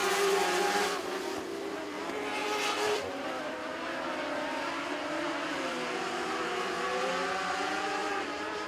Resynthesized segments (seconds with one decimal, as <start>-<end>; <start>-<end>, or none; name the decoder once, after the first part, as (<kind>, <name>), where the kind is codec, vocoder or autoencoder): 2.4-7.1 (vocoder, BigVGAN v2); 8.0-8.7